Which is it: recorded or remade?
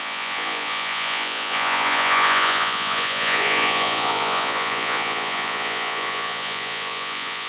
remade